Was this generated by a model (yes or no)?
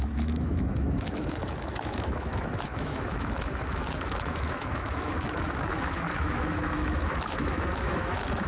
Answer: yes